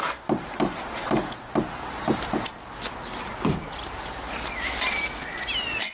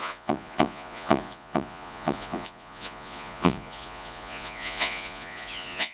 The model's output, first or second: second